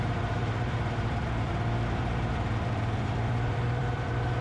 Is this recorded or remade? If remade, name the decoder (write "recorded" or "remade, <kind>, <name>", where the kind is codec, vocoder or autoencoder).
remade, vocoder, BigVGAN v2